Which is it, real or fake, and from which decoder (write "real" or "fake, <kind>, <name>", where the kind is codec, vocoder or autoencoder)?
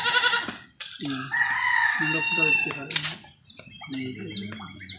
real